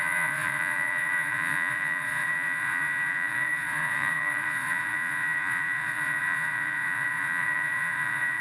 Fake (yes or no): yes